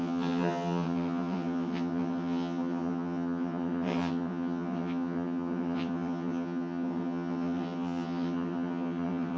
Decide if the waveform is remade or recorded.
remade